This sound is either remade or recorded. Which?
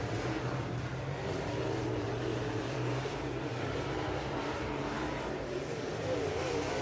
remade